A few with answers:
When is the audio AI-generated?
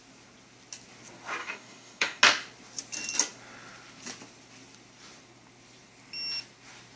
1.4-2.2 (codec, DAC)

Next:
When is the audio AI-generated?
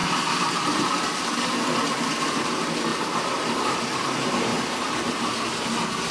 0.0-1.0 (vocoder, BigVGAN v2); 1.8-2.5; 2.9-3.8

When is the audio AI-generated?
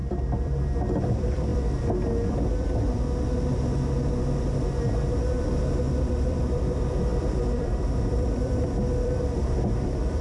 0.0-1.5 (vocoder, BigVGAN v2); 5.9-10.2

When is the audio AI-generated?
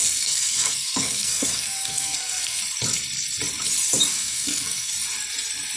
0.0-2.6 (codec, SNAC); 4.1-4.9